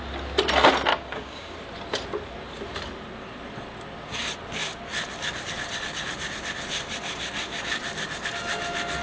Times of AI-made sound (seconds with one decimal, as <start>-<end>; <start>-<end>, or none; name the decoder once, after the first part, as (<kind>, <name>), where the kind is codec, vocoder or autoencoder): 0.9-1.5 (codec, DAC)